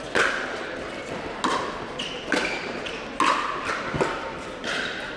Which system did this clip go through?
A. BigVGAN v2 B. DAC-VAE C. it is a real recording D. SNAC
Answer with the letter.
C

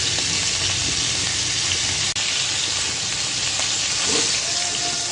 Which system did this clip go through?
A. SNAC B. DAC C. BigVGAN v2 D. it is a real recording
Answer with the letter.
D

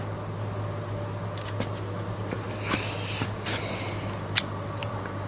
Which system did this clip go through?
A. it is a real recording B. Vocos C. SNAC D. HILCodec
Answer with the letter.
A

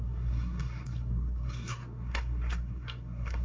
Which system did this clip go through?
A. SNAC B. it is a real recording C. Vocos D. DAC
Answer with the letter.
A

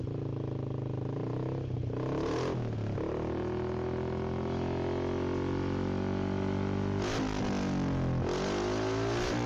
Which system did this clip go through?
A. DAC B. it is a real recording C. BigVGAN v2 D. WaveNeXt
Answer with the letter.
B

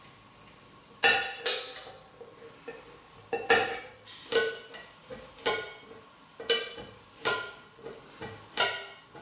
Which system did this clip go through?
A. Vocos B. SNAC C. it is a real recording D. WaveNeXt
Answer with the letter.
C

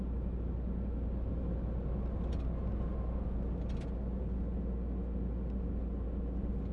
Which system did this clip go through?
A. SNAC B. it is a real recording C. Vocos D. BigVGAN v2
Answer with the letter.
B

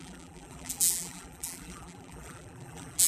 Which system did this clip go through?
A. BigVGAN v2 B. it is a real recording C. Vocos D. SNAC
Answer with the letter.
A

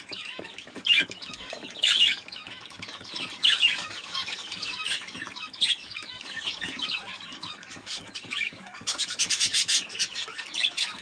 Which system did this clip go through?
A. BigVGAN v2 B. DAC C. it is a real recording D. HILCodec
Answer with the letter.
B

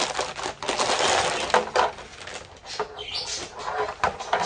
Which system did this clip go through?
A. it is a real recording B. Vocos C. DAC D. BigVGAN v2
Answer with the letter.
A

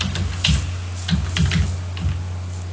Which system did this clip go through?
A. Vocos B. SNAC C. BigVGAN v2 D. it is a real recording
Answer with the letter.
D